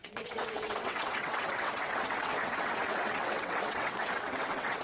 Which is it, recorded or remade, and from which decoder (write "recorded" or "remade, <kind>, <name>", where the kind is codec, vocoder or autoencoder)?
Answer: remade, vocoder, WaveNeXt